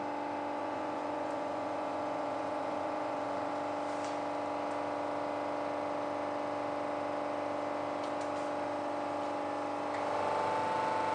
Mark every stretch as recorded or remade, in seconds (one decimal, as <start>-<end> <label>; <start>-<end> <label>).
0.0-0.6 recorded; 0.6-3.5 remade; 3.5-11.1 recorded